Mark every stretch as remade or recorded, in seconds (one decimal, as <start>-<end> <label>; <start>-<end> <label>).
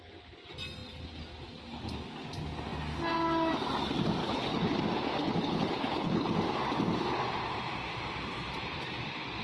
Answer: 0.0-4.2 recorded; 4.2-4.8 remade; 4.8-5.2 recorded; 5.2-6.3 remade; 6.3-9.4 recorded